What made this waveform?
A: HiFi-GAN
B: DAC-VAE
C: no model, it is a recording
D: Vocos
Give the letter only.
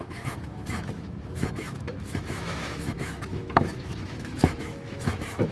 B